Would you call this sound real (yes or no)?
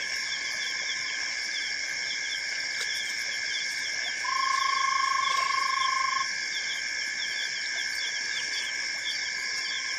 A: no